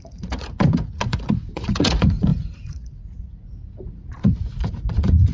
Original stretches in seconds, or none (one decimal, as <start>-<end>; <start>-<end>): none